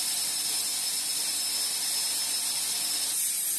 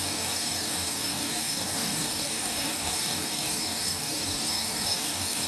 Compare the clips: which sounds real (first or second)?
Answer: first